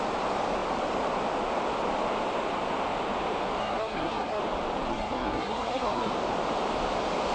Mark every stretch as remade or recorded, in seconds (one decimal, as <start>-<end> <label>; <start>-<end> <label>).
0.0-3.6 recorded; 3.6-4.4 remade; 4.4-4.9 recorded; 4.9-6.1 remade; 6.1-7.3 recorded